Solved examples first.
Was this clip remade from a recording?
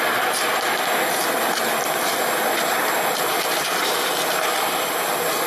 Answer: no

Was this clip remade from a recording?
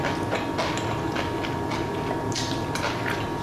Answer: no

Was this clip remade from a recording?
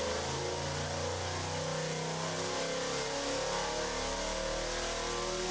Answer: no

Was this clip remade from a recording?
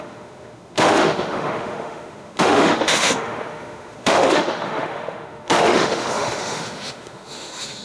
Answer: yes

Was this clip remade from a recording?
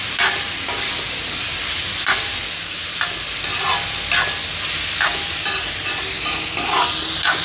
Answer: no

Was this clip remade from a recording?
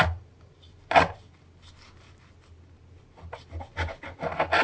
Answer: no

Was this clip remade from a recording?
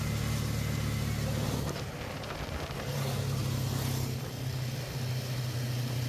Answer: no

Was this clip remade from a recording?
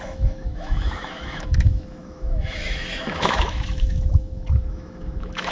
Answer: yes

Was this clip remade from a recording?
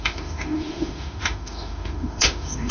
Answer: yes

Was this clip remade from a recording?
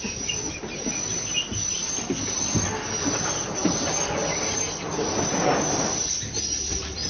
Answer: no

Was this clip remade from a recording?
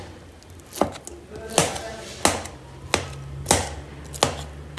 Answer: no